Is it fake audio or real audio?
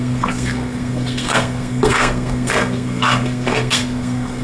fake